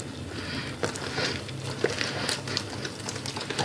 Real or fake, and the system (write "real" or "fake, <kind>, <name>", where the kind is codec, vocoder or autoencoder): fake, vocoder, BigVGAN v2